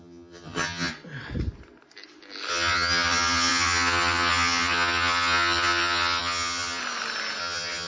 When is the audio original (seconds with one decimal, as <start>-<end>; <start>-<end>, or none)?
0.9-2.5; 6.8-7.4